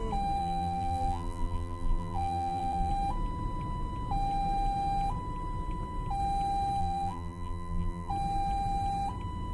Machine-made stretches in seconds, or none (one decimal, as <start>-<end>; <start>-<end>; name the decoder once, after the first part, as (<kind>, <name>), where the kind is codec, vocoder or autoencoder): 0.4-2.9 (vocoder, BigVGAN v2); 6.8-8.1